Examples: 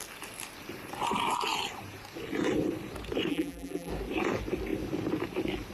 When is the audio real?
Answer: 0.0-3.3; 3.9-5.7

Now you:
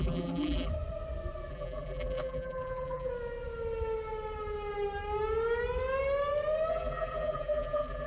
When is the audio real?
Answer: 0.7-1.5; 3.1-6.7

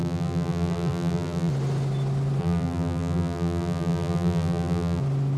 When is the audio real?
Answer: 1.5-2.4; 5.0-5.4

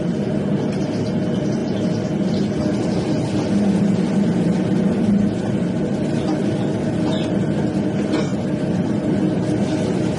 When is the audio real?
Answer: 0.0-10.2

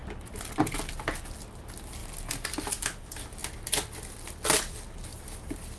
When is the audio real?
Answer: 0.0-5.1

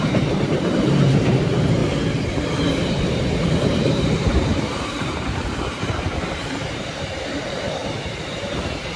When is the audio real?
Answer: 1.8-2.7

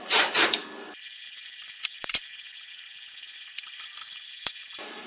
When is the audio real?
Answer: none

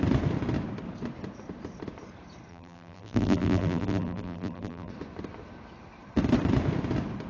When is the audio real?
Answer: 0.0-2.5; 4.9-7.3